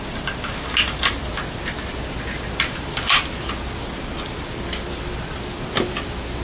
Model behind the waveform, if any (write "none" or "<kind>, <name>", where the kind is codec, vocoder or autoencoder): none